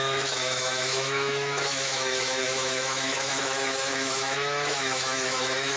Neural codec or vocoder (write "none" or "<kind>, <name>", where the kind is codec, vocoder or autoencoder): autoencoder, DAC-VAE